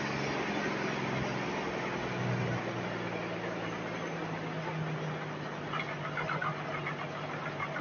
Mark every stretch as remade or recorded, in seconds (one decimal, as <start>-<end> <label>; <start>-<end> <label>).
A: 0.0-7.8 recorded